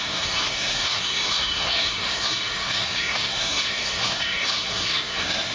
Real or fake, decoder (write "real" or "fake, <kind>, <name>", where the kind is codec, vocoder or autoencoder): fake, codec, SNAC